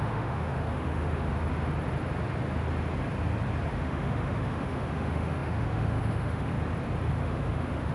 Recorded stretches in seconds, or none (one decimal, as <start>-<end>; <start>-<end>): 1.3-3.7; 6.5-7.1

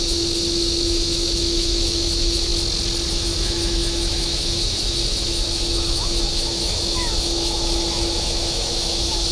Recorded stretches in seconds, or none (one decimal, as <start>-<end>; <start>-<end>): 2.5-3.1

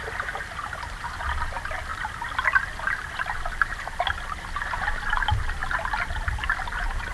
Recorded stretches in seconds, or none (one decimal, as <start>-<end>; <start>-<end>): 0.0-7.1

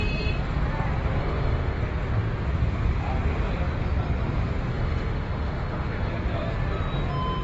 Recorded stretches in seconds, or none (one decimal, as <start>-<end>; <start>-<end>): 0.0-1.2; 1.8-4.7; 6.1-7.4

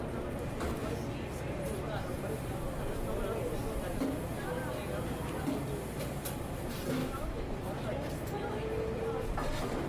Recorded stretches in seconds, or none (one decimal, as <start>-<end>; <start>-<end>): 0.0-7.0; 7.5-9.9